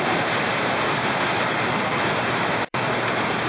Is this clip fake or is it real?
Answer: fake